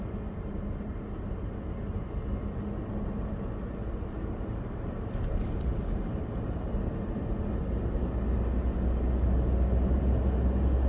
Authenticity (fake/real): real